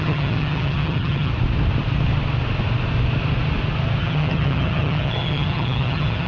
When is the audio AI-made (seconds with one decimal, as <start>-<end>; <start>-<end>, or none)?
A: 0.0-1.3; 4.0-6.3